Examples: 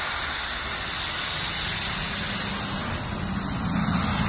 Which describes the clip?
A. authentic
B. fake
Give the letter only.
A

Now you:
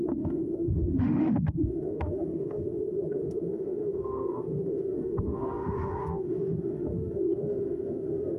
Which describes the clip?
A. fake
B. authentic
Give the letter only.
A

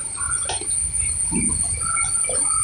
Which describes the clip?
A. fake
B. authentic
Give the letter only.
B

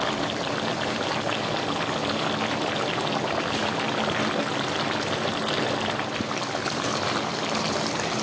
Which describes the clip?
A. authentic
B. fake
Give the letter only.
A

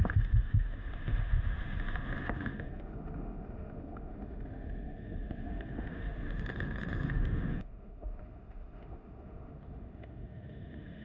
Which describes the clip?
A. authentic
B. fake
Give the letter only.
B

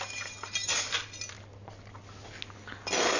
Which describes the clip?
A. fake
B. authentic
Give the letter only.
B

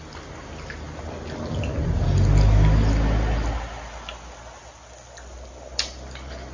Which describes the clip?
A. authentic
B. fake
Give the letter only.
A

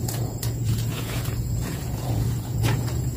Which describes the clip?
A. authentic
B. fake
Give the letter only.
B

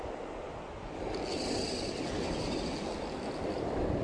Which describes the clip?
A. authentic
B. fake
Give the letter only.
A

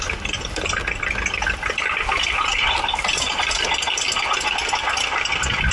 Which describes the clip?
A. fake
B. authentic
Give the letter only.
B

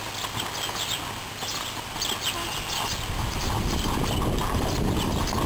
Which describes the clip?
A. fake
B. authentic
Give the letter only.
B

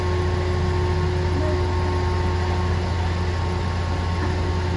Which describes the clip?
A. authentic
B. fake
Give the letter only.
A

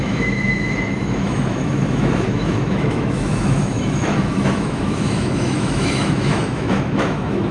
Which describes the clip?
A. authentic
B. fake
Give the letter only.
B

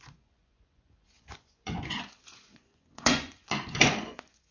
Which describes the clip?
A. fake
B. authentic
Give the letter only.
A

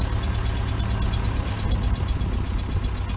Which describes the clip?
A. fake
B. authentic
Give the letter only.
B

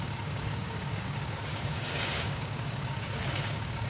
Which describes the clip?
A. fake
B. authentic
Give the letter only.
A